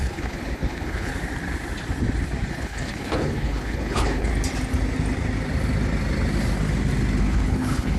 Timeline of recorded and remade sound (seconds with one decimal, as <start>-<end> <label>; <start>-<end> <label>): 0.0-1.1 remade; 1.1-2.5 recorded; 2.5-4.3 remade; 4.3-7.2 recorded; 7.2-8.0 remade